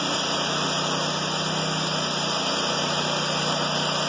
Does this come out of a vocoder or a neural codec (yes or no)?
no